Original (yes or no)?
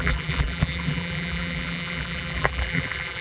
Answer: no